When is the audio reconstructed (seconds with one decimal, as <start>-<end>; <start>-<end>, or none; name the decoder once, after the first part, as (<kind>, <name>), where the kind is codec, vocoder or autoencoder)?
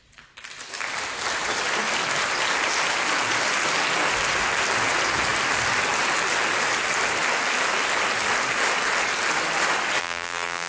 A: 10.0-10.7 (vocoder, BigVGAN v2)